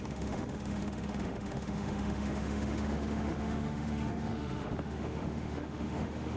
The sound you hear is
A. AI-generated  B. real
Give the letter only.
A